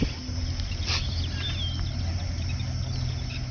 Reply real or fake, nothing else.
real